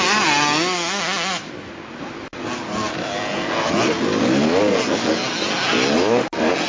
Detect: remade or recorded recorded